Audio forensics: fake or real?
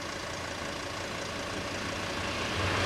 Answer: real